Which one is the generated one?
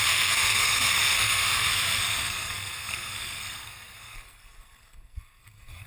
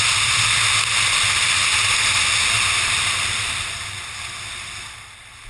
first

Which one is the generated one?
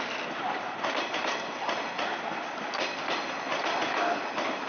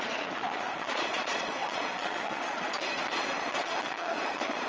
second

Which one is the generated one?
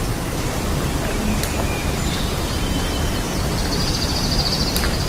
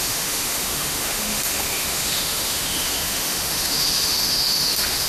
second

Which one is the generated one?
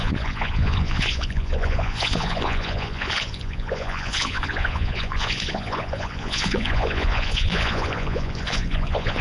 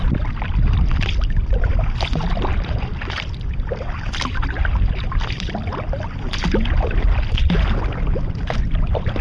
first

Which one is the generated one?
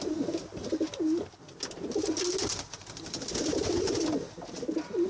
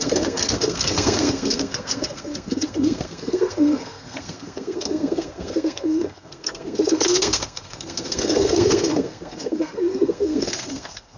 second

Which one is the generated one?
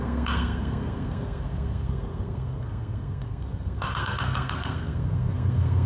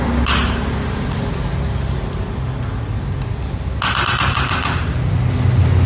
first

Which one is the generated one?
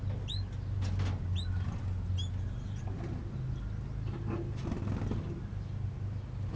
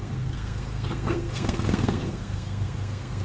second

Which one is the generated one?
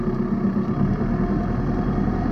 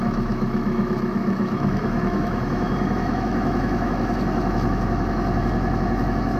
second